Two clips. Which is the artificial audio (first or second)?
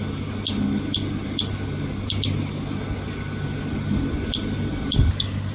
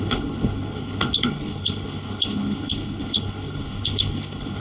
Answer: second